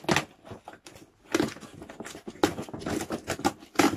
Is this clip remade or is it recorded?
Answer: recorded